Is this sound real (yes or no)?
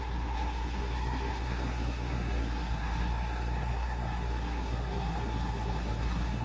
no